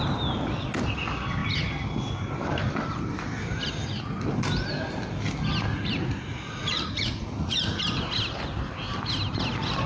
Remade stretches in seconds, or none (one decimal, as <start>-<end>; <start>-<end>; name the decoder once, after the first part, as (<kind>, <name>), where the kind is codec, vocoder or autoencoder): 5.7-7.8 (vocoder, Vocos)